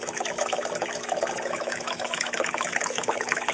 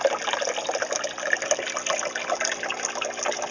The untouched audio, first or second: second